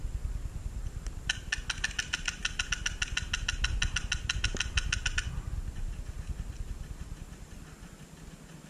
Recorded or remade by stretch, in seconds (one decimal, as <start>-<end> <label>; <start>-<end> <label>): 0.0-8.7 recorded